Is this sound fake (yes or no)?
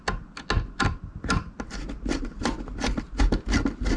no